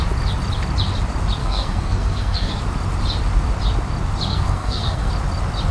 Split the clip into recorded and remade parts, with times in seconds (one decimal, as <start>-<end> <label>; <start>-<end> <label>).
0.0-1.4 recorded; 1.4-2.6 remade; 2.6-4.3 recorded; 4.3-5.1 remade; 5.1-5.7 recorded